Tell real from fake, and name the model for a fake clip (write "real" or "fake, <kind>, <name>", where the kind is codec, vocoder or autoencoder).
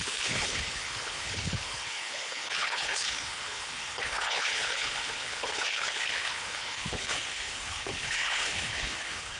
fake, codec, HILCodec